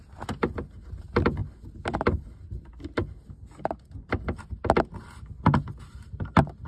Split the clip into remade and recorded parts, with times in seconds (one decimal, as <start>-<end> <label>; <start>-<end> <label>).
0.0-6.7 recorded